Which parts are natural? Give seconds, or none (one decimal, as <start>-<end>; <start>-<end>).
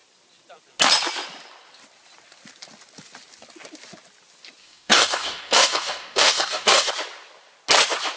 0.0-4.6; 6.9-8.2